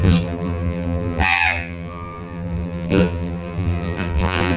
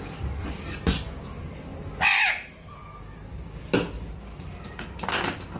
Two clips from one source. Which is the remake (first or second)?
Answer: first